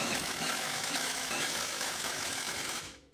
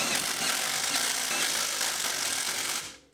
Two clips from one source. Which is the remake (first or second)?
first